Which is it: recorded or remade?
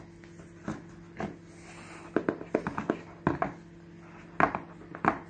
recorded